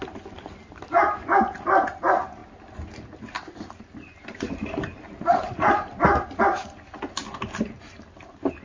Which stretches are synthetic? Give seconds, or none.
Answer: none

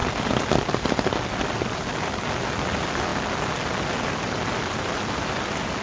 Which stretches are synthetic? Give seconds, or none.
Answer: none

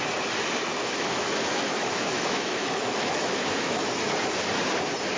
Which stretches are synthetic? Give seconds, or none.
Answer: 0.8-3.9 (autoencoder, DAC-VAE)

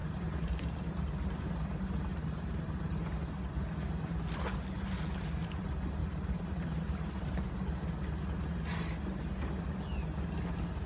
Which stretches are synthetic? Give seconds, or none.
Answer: 0.0-1.5 (vocoder, BigVGAN v2); 2.1-2.6; 6.0-8.0